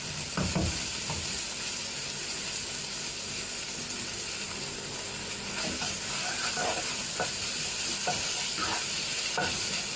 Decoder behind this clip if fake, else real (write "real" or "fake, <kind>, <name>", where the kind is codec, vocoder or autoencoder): real